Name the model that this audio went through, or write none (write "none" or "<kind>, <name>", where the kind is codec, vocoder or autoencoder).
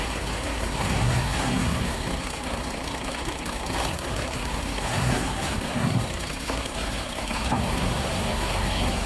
codec, SNAC